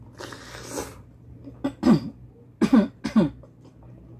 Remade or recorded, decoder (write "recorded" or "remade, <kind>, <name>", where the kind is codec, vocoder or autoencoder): recorded